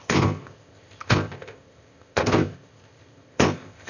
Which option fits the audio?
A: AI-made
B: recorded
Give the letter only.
A